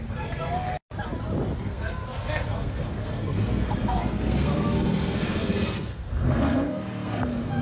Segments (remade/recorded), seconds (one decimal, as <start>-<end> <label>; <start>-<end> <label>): 0.0-0.7 remade; 0.7-1.6 recorded; 1.6-7.6 remade